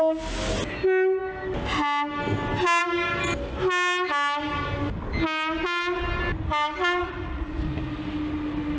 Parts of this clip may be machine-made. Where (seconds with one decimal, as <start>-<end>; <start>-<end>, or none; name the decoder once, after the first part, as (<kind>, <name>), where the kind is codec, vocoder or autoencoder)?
7.0-7.6 (vocoder, Vocos)